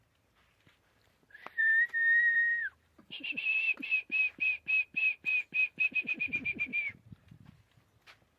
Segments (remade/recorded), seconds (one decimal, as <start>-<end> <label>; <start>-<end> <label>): 0.0-0.4 recorded; 0.4-5.1 remade; 5.1-6.7 recorded; 6.7-7.8 remade; 7.8-8.4 recorded